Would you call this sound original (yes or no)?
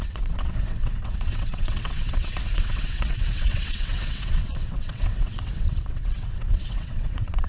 no